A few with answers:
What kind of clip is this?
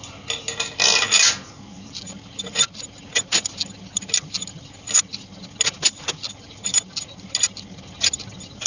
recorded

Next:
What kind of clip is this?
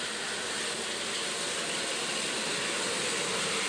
recorded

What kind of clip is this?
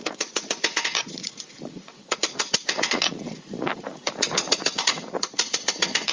remade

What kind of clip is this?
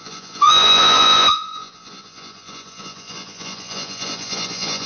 remade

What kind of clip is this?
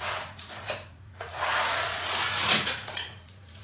remade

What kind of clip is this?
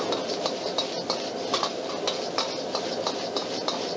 recorded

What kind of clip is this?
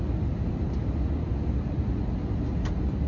recorded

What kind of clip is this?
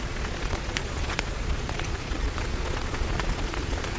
remade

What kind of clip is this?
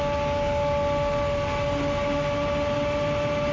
recorded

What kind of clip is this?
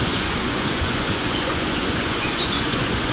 remade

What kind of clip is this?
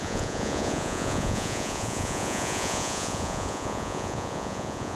remade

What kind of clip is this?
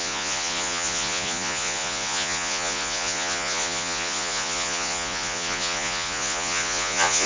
remade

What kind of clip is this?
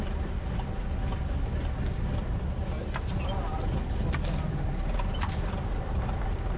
recorded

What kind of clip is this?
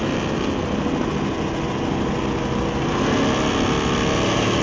recorded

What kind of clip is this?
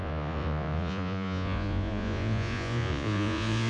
remade